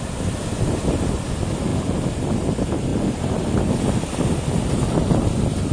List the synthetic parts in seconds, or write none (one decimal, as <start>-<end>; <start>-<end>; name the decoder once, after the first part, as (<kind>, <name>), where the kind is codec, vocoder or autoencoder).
none